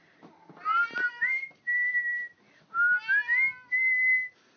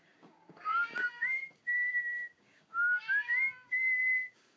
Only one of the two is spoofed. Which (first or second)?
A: second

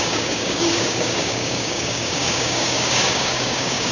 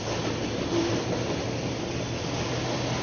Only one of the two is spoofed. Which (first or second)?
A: first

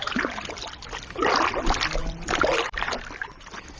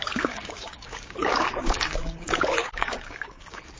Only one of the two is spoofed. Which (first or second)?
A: second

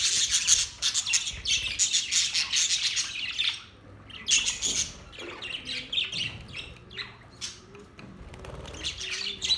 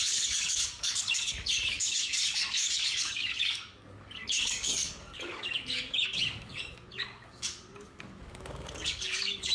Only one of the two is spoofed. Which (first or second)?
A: second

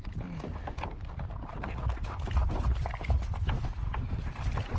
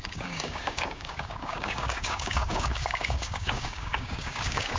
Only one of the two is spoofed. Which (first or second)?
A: second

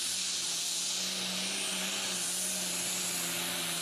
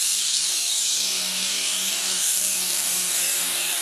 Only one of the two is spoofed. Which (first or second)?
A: second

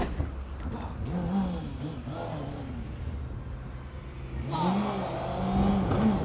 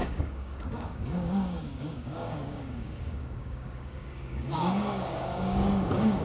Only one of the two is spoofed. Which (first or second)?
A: second